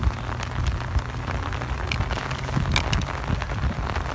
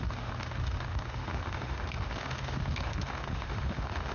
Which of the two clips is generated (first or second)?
second